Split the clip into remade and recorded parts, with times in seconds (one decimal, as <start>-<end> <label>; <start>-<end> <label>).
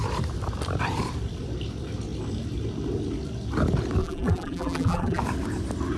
0.0-4.0 recorded; 4.0-5.2 remade; 5.2-6.0 recorded